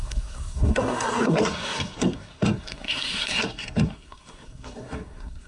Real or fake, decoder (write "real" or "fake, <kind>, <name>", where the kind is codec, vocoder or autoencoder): fake, codec, SNAC